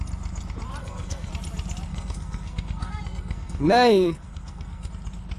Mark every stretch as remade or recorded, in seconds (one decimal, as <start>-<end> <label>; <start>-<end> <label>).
0.0-0.8 recorded; 0.8-1.3 remade; 1.3-1.9 recorded; 1.9-4.9 remade; 4.9-5.4 recorded